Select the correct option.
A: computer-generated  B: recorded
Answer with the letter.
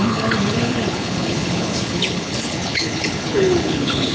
A